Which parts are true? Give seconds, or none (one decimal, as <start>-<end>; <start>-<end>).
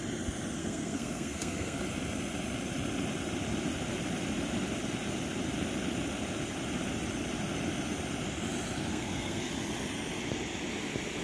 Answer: 0.0-0.6; 1.8-8.9; 9.5-11.2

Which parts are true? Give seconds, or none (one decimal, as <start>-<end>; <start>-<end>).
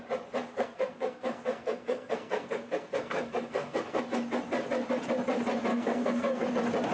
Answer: 0.0-0.5; 4.0-5.7; 6.5-6.9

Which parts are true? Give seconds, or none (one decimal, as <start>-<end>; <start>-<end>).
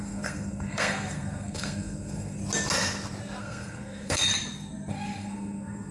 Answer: 2.4-3.4; 4.3-4.9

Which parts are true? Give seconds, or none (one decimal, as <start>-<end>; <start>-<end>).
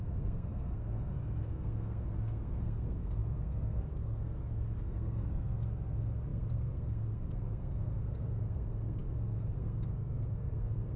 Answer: none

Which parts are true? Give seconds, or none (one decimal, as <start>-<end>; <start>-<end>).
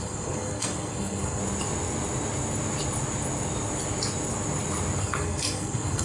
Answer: 1.4-5.0